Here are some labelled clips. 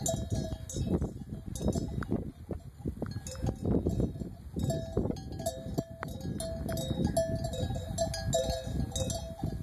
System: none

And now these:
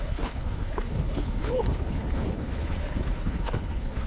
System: codec, HILCodec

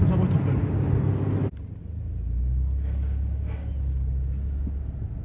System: none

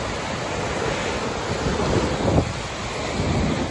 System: none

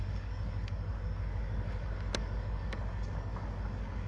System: codec, DAC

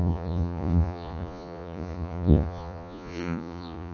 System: vocoder, Vocos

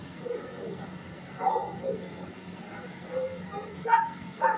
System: codec, SNAC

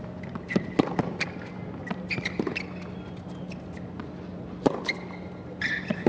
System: none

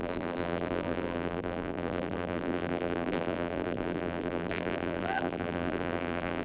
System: vocoder, BigVGAN v2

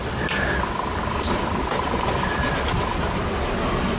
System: none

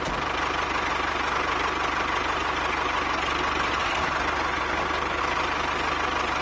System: none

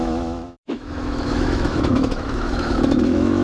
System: autoencoder, DAC-VAE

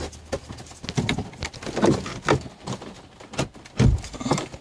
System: none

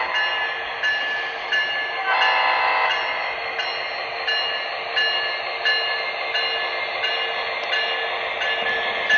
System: none